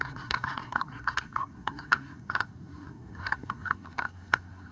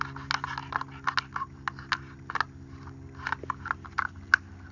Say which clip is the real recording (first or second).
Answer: second